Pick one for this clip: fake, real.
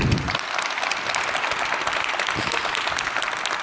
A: real